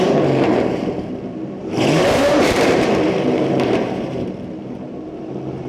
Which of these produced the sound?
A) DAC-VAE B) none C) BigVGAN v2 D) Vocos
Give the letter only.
C